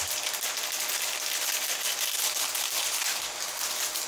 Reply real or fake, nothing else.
real